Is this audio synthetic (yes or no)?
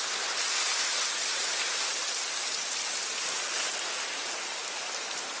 no